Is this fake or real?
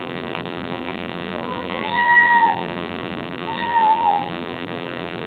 fake